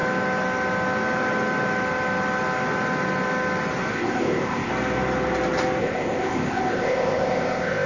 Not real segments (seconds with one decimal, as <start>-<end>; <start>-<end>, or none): 3.9-4.7; 5.8-7.9